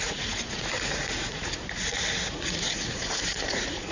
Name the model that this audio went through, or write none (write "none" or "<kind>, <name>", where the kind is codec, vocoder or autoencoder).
vocoder, Vocos